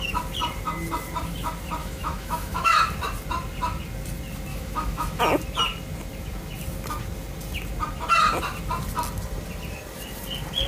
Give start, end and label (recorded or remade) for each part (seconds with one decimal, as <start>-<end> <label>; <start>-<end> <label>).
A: 0.0-1.8 recorded; 1.8-2.8 remade; 2.8-4.5 recorded; 4.5-5.2 remade; 5.2-10.7 recorded

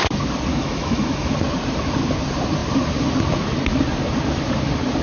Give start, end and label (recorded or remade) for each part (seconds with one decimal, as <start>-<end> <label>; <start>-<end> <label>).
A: 0.0-0.5 recorded; 0.5-1.3 remade; 1.3-5.0 recorded